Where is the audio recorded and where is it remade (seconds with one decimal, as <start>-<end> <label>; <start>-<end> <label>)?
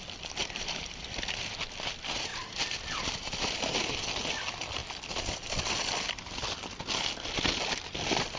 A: 0.0-0.4 recorded; 0.4-1.0 remade; 1.0-2.3 recorded; 2.3-4.2 remade; 4.2-8.4 recorded